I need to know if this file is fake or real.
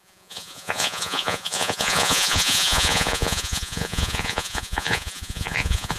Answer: fake